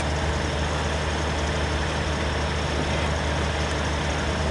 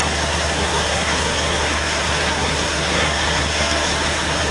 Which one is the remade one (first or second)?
second